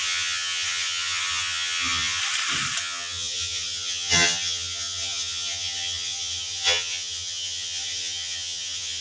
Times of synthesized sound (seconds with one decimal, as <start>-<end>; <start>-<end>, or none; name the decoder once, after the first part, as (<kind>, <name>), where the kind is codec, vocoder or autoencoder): 0.0-2.2 (vocoder, HiFi-GAN); 2.8-9.0